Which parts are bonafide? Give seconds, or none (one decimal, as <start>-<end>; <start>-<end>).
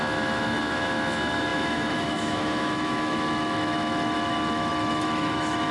none